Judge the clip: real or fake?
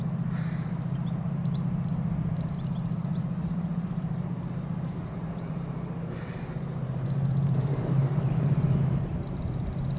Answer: fake